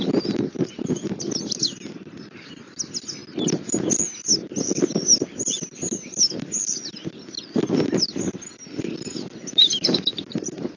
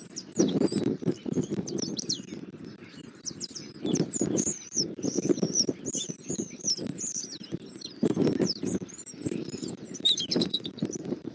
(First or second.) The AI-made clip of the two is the second